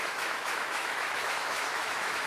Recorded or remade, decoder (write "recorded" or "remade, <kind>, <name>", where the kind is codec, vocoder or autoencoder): remade, autoencoder, DAC-VAE